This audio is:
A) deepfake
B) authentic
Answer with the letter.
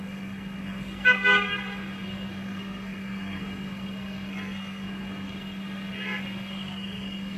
A